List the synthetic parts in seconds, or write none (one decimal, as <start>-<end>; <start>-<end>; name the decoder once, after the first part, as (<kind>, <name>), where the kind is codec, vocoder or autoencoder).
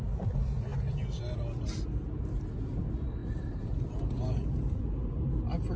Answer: 3.2-4.8 (vocoder, BigVGAN v2)